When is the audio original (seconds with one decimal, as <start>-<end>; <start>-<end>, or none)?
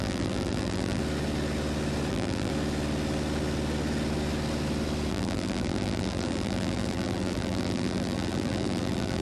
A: 1.0-2.1; 2.5-5.1